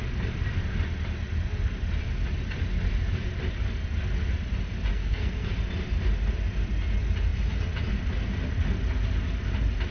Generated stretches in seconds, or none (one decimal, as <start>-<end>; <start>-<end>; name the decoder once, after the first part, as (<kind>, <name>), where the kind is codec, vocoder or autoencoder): 4.9-5.5 (codec, SNAC)